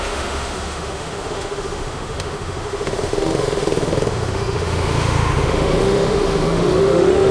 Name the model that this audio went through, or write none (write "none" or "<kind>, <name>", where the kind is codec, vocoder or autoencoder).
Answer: autoencoder, DAC-VAE